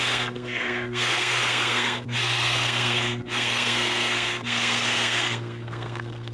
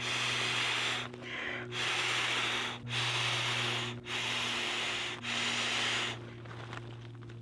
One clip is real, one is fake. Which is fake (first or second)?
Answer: first